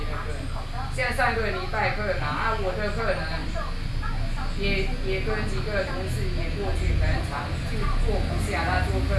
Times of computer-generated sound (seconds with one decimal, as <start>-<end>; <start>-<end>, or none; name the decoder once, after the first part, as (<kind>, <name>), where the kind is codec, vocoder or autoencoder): 3.4-4.0 (vocoder, BigVGAN v2)